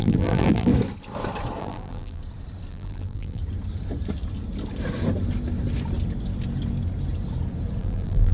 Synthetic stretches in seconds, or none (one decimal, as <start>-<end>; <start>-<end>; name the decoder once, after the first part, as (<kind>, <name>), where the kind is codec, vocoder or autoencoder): 0.0-0.7 (vocoder, BigVGAN v2); 1.6-2.2; 2.7-3.4; 7.8-8.3